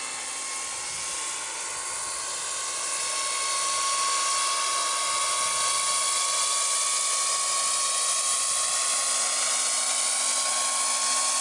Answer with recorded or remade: recorded